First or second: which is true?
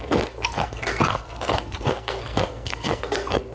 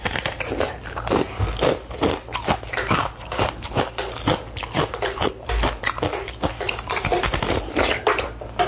second